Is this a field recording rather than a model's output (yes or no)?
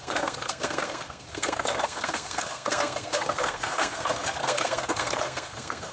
no